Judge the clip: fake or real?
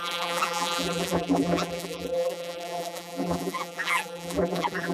fake